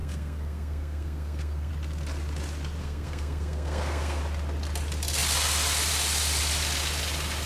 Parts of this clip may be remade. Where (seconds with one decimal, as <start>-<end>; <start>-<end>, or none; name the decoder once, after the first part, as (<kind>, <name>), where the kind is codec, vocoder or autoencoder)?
0.0-1.7 (codec, SNAC); 2.8-4.2